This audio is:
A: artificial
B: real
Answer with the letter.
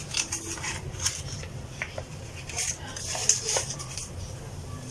B